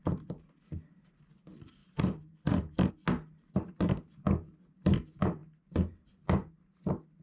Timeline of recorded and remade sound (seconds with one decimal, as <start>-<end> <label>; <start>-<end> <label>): 0.0-1.8 recorded; 1.8-2.9 remade; 2.9-7.2 recorded

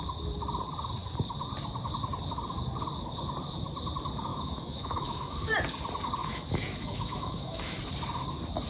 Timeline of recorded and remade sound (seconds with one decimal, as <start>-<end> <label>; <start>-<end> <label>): 0.0-4.3 recorded; 4.3-5.5 remade; 5.5-6.2 recorded; 6.2-7.8 remade; 7.8-8.7 recorded

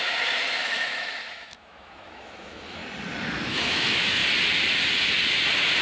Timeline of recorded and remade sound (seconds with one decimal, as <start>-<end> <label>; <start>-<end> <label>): 0.0-2.8 remade; 2.8-3.5 recorded; 3.5-4.2 remade; 4.2-5.8 recorded

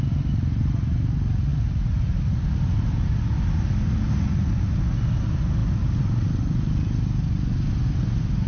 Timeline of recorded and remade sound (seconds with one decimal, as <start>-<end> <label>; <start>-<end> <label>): 0.0-1.5 recorded; 1.5-3.1 remade; 3.1-8.5 recorded

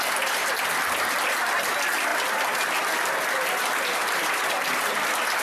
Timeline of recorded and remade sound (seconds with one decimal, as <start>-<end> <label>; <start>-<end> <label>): 0.0-5.4 recorded

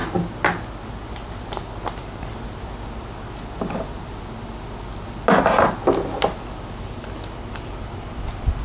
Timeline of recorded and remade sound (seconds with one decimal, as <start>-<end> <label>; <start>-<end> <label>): 0.0-8.6 recorded

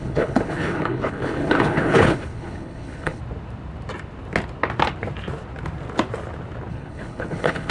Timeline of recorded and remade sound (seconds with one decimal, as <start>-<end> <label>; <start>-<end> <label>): 0.0-3.2 remade; 3.2-6.7 recorded; 6.7-7.7 remade